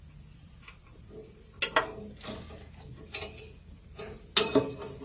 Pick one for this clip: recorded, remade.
recorded